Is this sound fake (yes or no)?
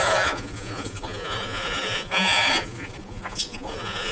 yes